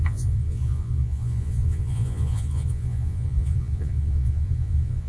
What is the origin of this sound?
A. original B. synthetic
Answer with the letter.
B